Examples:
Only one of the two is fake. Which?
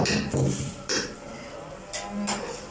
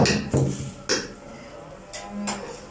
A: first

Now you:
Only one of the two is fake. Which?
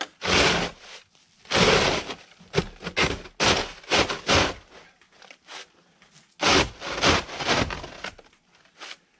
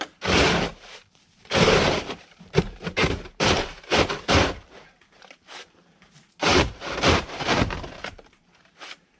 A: second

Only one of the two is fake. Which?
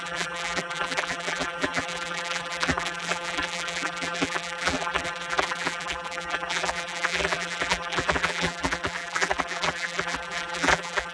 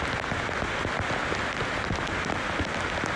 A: first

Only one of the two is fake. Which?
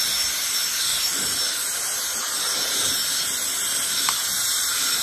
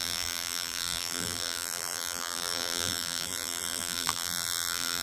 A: second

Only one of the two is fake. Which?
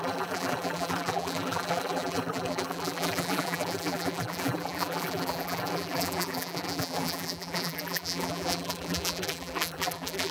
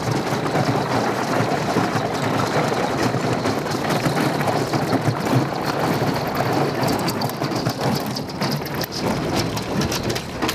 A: first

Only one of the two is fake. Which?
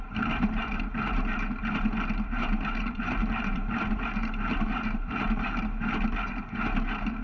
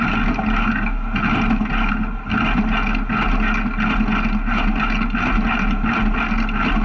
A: first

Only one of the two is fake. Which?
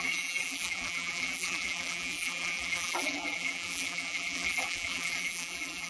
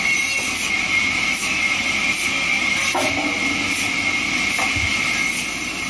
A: first